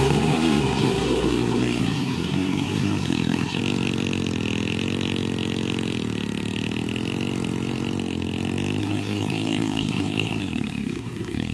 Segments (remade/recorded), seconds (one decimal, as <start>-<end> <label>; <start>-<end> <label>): 0.0-3.6 remade; 3.6-8.8 recorded; 8.8-11.5 remade